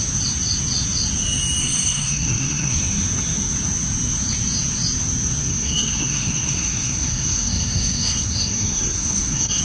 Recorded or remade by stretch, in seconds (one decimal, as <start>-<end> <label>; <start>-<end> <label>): 0.0-1.6 recorded; 1.6-2.8 remade; 2.8-5.5 recorded; 5.5-9.6 remade